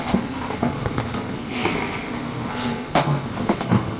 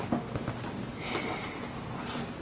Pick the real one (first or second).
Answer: second